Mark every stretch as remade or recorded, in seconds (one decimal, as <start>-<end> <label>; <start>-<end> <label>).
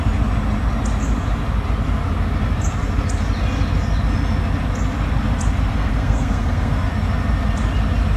0.0-5.7 recorded; 5.7-6.9 remade; 6.9-8.2 recorded